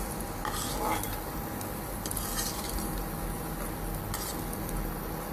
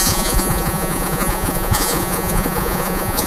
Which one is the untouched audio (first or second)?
first